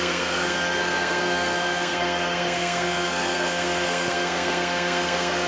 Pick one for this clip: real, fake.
fake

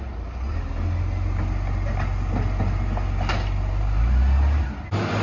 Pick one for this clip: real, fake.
real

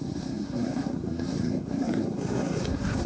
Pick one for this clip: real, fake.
fake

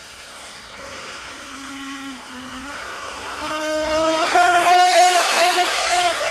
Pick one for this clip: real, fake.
fake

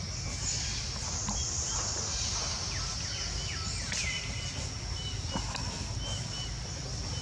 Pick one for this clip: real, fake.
real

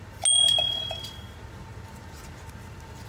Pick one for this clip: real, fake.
real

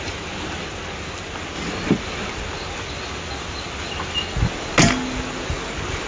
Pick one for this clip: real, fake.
real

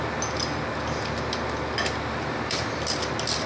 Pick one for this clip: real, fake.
real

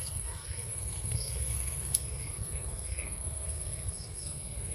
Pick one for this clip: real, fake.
fake